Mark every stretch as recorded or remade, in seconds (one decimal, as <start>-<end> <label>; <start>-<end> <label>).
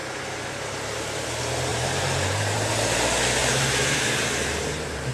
0.0-0.5 remade; 0.5-1.7 recorded; 1.7-2.7 remade; 2.7-3.4 recorded; 3.4-5.1 remade